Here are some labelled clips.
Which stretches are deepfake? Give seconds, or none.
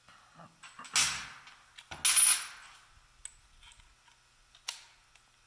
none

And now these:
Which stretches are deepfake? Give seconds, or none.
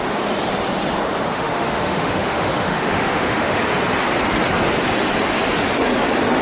1.3-3.6 (autoencoder, DAC-VAE)